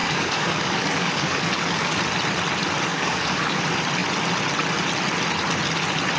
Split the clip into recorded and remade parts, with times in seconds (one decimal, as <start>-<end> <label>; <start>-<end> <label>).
0.0-2.0 remade; 2.0-2.9 recorded; 2.9-3.6 remade; 3.6-6.2 recorded